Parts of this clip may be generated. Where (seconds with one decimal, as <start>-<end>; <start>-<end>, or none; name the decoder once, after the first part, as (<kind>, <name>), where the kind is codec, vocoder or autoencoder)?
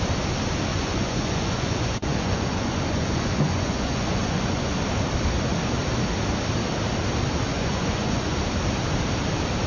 0.7-4.7 (vocoder, Vocos); 7.5-8.4